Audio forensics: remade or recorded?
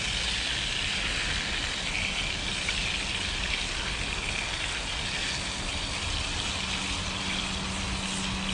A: recorded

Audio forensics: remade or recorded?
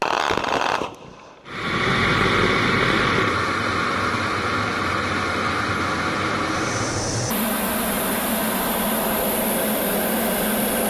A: recorded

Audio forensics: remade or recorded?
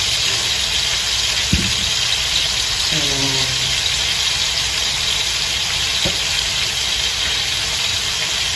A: recorded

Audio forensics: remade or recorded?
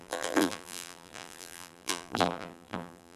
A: remade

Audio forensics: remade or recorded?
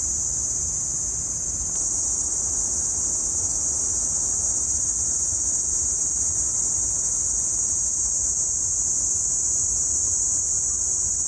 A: recorded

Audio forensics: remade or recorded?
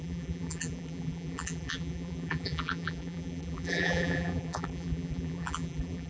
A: remade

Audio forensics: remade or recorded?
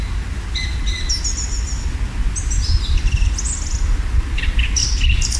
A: recorded